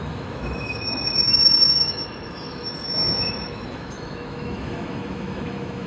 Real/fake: fake